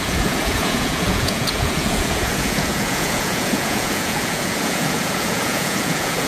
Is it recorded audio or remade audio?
remade